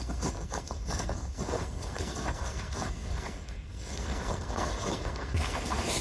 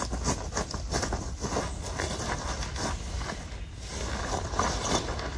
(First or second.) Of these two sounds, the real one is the second